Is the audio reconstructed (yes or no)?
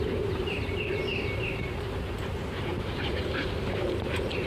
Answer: yes